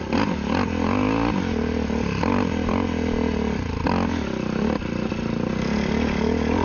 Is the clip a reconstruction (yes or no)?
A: no